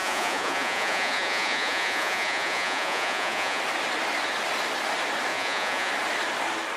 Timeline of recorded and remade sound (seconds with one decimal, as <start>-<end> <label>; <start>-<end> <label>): 0.0-3.6 remade; 3.6-5.3 recorded; 5.3-5.9 remade; 5.9-6.8 recorded